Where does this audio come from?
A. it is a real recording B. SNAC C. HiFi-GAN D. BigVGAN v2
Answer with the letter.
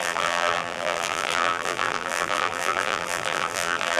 D